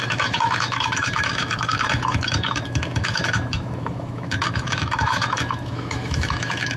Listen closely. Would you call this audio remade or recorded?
remade